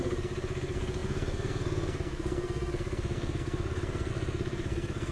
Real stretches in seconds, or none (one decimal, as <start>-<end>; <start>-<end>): none